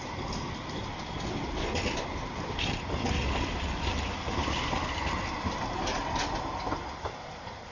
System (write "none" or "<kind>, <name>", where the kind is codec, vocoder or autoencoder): none